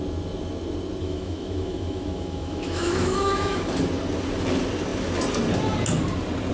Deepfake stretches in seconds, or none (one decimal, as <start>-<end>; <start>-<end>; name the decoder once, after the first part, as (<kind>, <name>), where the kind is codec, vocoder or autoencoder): 1.0-3.7 (autoencoder, DAC-VAE)